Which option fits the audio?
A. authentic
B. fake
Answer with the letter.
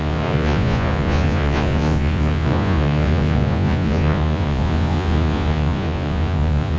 B